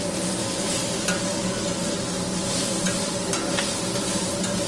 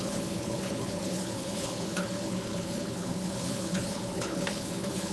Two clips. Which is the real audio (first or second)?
first